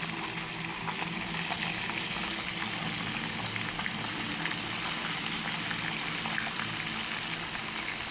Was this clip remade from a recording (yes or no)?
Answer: no